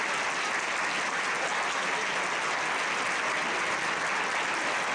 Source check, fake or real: real